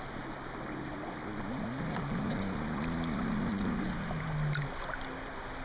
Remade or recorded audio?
recorded